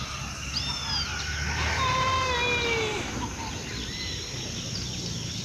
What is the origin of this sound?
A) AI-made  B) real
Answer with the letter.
B